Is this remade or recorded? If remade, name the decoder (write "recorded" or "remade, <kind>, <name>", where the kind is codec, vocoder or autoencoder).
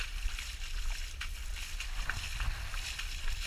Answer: recorded